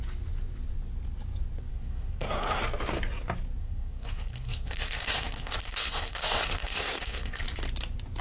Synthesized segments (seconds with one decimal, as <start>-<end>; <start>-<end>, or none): 1.7-2.6; 3.6-7.4